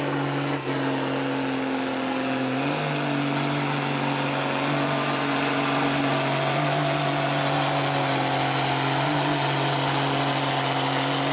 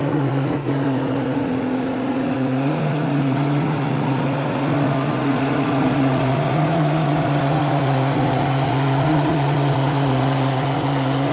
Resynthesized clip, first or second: second